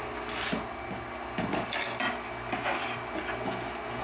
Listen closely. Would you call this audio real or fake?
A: real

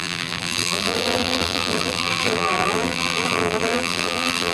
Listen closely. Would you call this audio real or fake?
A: fake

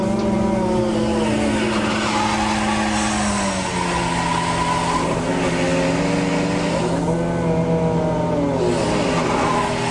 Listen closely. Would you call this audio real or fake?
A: real